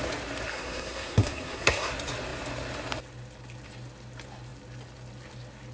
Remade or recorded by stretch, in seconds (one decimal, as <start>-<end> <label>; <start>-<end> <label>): 0.0-0.5 recorded; 0.5-1.9 remade; 1.9-5.7 recorded